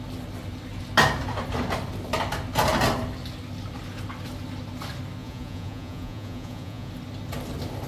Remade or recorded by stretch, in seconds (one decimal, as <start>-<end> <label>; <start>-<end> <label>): 0.0-5.2 recorded; 5.2-6.9 remade; 6.9-7.9 recorded